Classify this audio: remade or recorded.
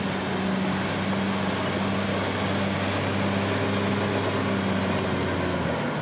recorded